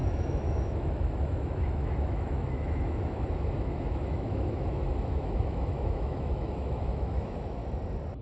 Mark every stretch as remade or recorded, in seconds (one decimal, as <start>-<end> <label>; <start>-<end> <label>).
0.0-7.6 remade; 7.6-8.2 recorded